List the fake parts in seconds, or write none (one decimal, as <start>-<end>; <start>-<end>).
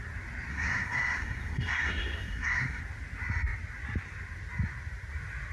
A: 0.5-2.8